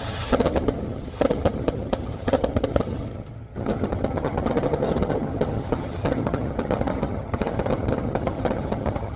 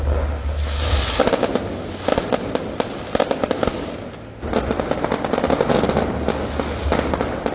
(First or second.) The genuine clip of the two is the second